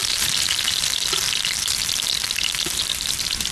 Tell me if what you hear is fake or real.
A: real